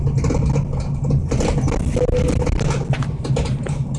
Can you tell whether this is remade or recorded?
recorded